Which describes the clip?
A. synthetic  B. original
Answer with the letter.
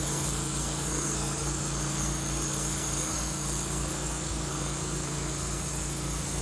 A